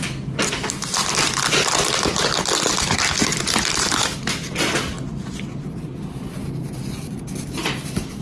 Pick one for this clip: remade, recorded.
recorded